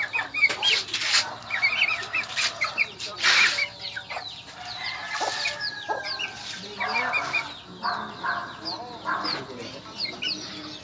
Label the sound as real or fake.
real